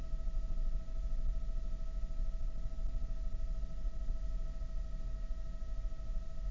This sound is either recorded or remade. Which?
recorded